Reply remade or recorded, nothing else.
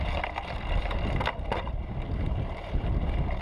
recorded